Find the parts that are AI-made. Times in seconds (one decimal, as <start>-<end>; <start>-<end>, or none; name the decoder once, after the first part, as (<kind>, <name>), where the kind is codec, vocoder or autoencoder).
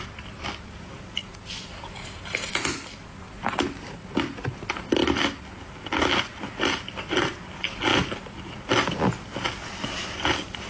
1.2-1.7 (vocoder, BigVGAN v2); 7.9-8.7